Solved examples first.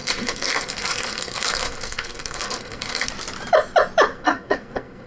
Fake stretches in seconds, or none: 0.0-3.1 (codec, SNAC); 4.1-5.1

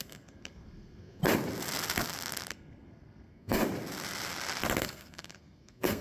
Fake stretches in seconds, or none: 0.0-1.2 (codec, SNAC); 2.5-3.6; 4.8-6.0

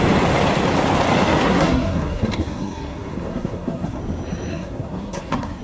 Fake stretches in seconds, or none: 1.4-4.0 (codec, SNAC); 4.5-5.6